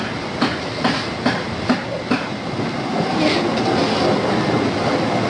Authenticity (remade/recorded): recorded